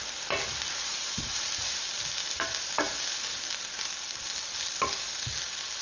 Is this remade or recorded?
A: recorded